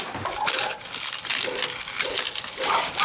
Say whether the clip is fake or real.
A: real